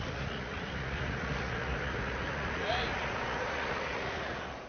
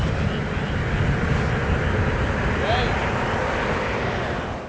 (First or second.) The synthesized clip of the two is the first